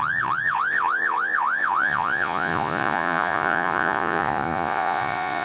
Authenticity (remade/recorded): remade